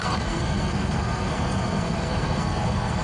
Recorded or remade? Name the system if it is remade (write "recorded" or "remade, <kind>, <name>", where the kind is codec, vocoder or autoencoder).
remade, codec, SNAC